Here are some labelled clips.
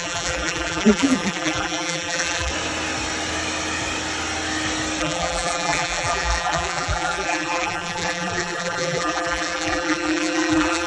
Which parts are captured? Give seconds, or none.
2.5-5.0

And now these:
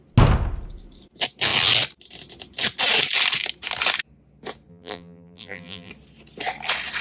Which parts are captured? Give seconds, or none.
0.0-4.7; 5.9-7.0

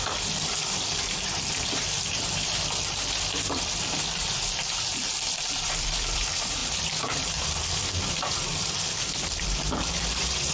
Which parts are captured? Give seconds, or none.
none

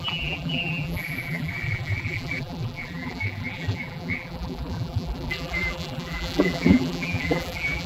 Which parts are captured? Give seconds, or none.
none

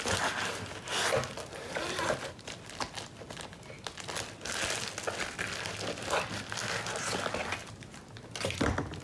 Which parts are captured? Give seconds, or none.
0.0-7.6; 8.1-9.0

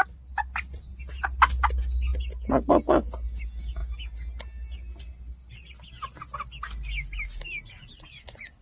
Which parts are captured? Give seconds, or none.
0.0-8.6

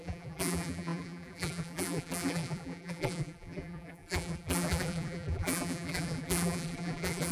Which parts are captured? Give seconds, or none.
none